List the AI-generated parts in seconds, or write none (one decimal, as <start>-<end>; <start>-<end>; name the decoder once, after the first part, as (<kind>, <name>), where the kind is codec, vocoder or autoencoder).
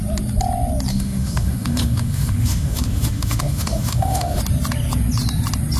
0.9-4.4 (autoencoder, DAC-VAE)